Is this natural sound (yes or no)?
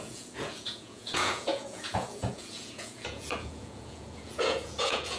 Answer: no